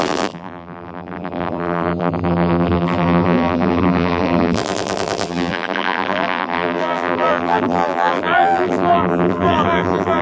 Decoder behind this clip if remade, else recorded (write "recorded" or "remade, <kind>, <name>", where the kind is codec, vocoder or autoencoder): remade, vocoder, BigVGAN v2